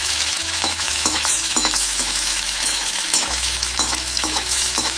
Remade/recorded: remade